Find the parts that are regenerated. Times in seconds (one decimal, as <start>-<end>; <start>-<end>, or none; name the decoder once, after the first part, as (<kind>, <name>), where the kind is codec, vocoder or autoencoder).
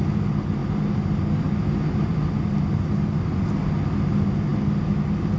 none